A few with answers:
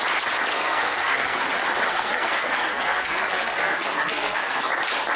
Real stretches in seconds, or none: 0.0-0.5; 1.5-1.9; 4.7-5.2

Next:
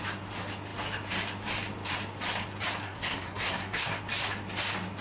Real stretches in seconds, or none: 0.0-2.8; 4.0-5.0

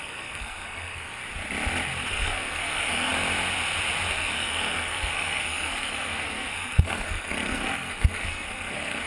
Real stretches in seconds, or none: 1.2-2.1; 3.1-4.1

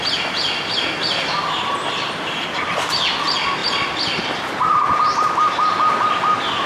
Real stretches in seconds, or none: 0.0-6.7